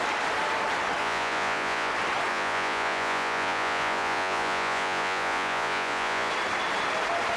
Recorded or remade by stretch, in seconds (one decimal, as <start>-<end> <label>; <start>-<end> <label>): 0.0-1.0 recorded; 1.0-1.9 remade; 1.9-2.3 recorded; 2.3-6.3 remade; 6.3-7.4 recorded